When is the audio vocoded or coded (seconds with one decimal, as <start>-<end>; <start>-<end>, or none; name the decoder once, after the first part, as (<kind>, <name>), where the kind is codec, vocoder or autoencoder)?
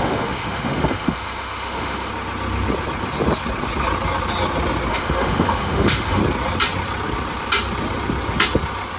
0.0-2.1 (autoencoder, DAC-VAE); 4.9-6.2